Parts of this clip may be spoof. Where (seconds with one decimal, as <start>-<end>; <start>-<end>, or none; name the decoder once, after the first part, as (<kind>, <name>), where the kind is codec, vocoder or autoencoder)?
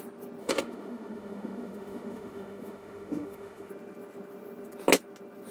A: 0.4-3.7 (autoencoder, DAC-VAE)